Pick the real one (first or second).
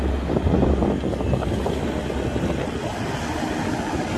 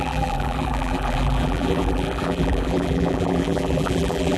first